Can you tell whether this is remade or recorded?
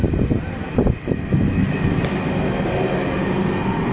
recorded